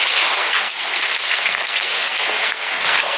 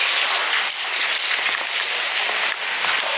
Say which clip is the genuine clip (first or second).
second